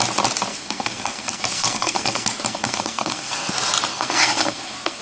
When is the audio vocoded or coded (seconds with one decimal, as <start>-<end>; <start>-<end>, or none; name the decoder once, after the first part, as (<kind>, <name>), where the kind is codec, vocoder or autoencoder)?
0.5-3.5 (codec, SNAC); 3.9-5.0